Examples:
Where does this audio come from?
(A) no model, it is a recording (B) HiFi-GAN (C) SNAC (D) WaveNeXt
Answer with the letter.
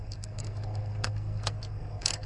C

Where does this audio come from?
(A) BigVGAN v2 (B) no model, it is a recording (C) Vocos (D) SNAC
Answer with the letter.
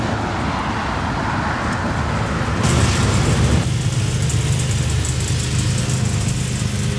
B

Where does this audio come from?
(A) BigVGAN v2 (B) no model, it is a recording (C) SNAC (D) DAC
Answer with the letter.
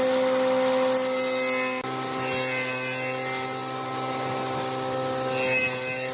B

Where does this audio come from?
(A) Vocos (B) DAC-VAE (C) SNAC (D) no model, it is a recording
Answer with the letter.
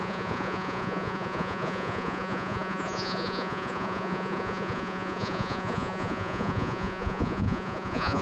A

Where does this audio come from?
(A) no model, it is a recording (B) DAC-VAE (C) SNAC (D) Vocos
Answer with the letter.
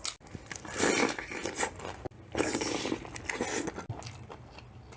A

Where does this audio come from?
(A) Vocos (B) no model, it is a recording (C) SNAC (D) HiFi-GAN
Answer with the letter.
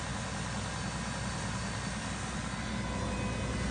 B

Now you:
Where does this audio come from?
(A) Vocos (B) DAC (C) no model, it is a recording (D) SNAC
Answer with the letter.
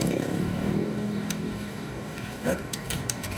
B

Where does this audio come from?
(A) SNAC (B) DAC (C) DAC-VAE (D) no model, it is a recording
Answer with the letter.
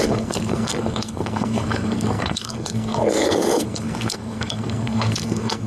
A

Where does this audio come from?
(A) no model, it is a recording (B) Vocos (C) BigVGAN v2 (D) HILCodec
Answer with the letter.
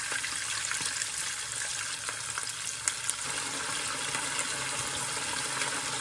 A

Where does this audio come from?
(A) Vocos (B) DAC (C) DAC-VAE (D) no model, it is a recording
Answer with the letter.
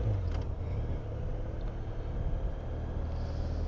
D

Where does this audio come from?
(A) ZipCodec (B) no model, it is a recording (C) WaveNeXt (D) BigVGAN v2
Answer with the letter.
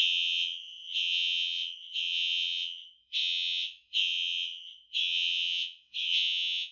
C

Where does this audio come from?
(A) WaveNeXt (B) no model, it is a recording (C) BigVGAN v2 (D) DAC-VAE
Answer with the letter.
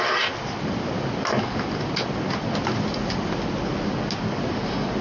B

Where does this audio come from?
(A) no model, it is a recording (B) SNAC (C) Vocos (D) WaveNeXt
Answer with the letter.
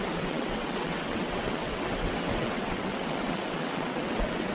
D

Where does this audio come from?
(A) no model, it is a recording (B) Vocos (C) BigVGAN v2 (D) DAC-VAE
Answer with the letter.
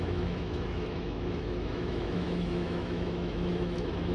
D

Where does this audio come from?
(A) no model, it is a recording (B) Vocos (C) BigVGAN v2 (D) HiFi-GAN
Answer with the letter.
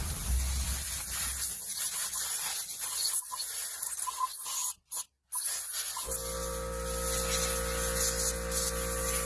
A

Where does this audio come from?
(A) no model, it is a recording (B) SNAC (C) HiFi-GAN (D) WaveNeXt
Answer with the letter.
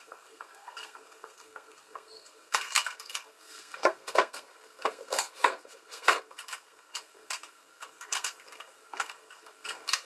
B